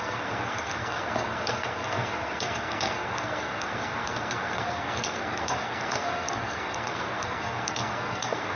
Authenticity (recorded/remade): remade